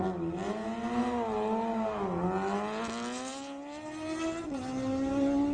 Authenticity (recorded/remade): recorded